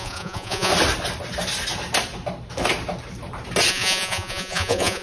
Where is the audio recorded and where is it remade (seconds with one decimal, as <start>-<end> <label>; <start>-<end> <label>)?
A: 0.0-0.7 remade; 0.7-3.7 recorded; 3.7-5.0 remade